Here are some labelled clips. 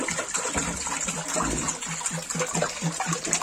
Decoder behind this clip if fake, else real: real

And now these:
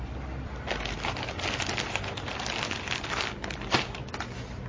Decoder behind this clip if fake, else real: real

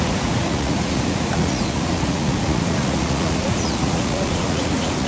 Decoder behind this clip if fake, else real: fake, vocoder, Vocos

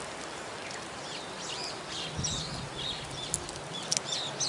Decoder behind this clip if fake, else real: real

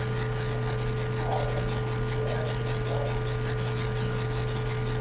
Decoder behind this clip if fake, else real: real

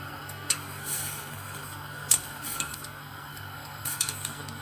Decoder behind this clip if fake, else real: fake, codec, SNAC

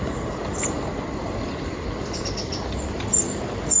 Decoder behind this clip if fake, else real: real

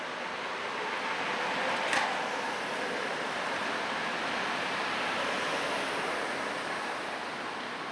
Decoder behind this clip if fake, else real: real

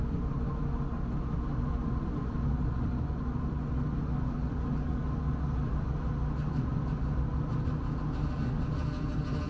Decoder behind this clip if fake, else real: real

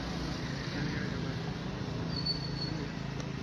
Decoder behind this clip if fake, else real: real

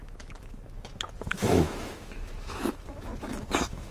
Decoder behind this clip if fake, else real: fake, autoencoder, DAC-VAE